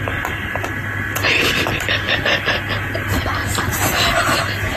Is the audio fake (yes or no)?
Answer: no